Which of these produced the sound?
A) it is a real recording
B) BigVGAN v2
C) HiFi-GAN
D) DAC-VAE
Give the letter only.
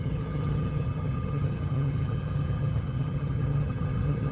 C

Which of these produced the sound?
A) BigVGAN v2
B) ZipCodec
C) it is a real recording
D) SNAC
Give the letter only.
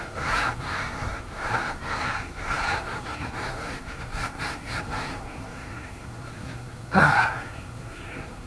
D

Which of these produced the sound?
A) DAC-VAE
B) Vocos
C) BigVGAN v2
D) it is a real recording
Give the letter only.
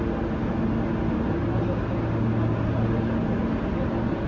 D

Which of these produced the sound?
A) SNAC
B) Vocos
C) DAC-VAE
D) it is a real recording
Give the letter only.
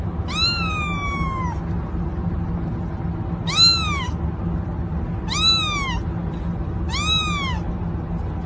D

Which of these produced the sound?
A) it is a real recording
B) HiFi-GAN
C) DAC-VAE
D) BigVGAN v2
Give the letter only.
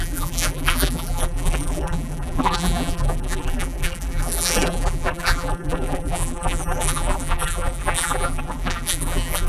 D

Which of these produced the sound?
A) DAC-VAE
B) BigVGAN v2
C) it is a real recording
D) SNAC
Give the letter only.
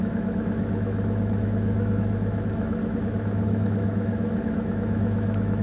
A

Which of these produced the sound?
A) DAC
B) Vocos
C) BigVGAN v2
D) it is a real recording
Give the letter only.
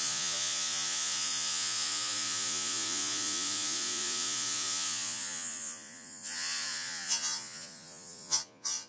B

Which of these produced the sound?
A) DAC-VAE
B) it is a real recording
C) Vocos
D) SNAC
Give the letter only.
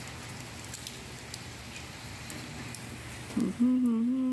B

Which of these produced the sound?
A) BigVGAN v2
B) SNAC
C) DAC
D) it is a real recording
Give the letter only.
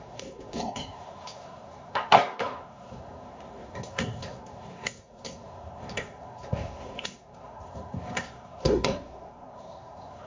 B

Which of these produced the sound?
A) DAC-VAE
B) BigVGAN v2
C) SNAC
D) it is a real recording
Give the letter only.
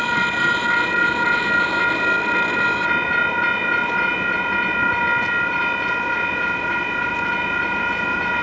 D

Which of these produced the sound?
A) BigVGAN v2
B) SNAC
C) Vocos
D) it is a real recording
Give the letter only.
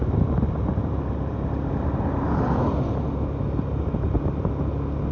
D